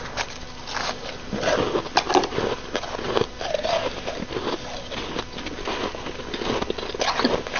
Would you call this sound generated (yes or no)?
no